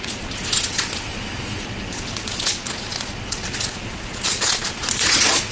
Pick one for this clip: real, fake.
fake